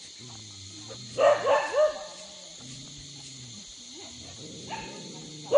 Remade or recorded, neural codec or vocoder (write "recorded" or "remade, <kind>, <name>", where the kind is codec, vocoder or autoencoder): recorded